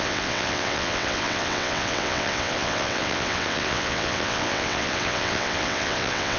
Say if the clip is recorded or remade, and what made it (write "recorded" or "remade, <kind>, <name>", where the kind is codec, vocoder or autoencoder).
remade, vocoder, WaveNeXt